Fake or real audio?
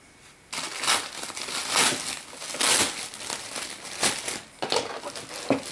real